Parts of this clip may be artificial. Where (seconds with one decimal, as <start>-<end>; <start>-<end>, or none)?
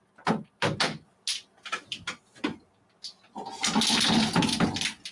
none